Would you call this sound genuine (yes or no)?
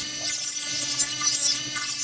yes